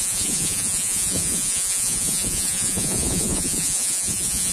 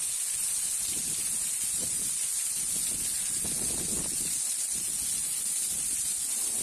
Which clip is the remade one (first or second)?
first